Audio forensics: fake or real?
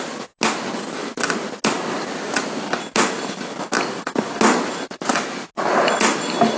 real